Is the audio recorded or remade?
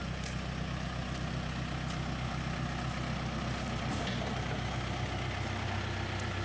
recorded